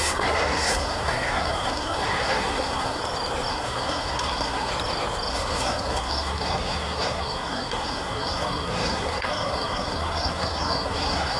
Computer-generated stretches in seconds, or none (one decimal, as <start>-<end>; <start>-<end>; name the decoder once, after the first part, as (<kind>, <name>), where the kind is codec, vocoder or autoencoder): 0.0-3.0 (codec, SNAC); 3.5-4.7; 5.3-11.4